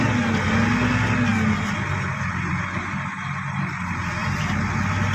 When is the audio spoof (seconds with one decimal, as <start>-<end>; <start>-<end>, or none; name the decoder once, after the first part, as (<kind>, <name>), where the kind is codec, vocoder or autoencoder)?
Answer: none